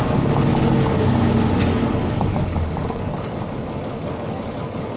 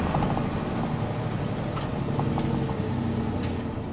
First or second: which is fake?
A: first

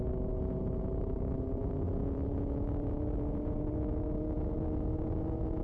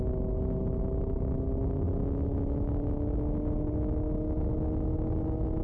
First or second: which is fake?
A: first